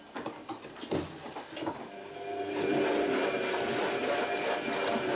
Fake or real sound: real